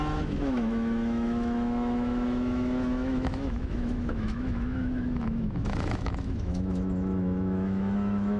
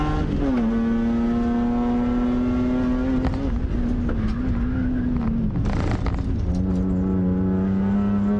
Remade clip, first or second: first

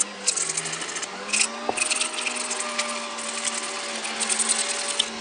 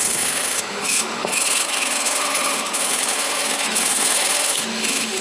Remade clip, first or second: second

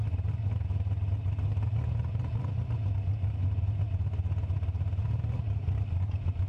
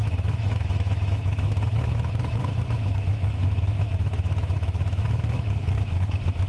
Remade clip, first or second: second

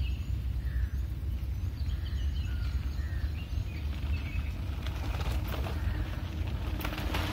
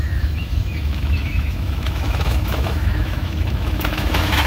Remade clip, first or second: second